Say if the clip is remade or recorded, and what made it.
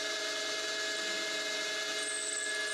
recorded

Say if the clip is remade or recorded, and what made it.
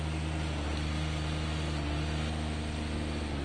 recorded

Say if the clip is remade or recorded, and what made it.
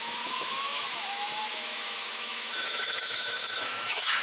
remade, autoencoder, DAC-VAE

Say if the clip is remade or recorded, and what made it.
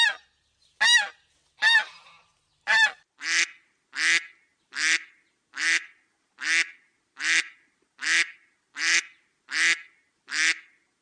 recorded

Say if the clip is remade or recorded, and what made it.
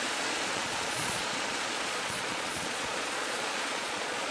remade, vocoder, Vocos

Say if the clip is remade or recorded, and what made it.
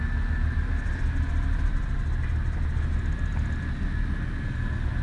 recorded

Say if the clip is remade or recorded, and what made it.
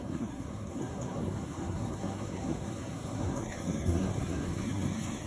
remade, codec, SNAC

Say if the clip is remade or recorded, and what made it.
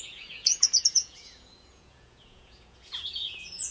remade, vocoder, Vocos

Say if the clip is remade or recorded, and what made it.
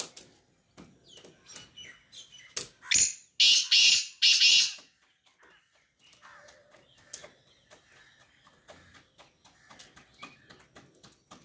recorded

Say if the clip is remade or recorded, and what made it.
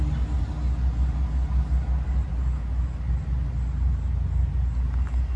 recorded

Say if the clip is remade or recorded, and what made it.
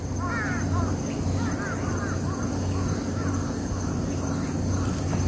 recorded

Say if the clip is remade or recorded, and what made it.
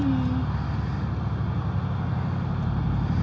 recorded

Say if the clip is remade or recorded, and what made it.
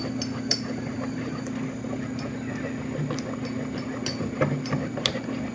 recorded